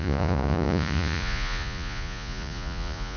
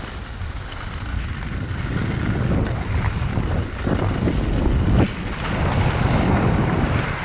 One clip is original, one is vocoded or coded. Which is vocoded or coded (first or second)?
first